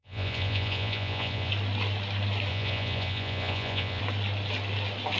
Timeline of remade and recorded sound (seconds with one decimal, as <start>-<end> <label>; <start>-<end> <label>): 0.0-1.5 remade; 1.5-2.5 recorded; 2.5-4.0 remade; 4.0-5.2 recorded